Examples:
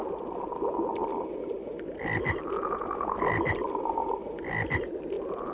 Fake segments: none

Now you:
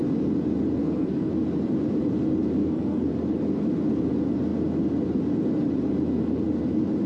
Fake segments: 0.8-1.3 (codec, SNAC); 2.6-3.1

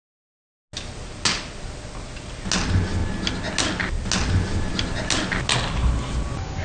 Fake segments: none